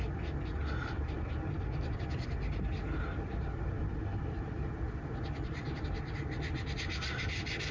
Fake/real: real